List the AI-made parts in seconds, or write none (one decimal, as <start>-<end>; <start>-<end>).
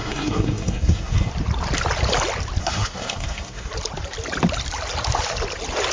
0.0-1.3; 2.6-3.7